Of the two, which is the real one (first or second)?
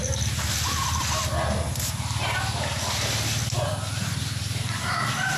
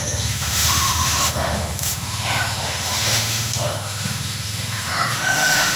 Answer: first